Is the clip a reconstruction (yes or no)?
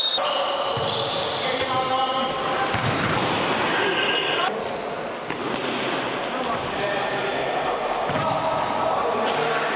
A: no